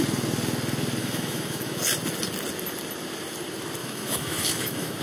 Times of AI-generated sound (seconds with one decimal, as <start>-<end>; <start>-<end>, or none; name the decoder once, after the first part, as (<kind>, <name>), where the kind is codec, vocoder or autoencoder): 1.0-1.8 (autoencoder, DAC-VAE); 3.8-5.0